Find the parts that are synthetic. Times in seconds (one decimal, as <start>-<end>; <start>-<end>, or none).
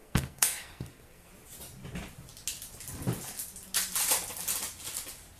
0.0-1.3